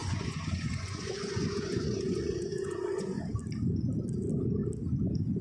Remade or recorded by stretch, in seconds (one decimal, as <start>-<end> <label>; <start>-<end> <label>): 0.0-3.2 remade; 3.2-5.4 recorded